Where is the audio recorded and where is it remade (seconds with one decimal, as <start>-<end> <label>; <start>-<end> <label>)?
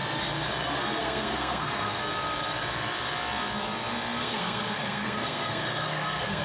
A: 0.0-1.0 recorded; 1.0-2.0 remade; 2.0-4.2 recorded; 4.2-6.4 remade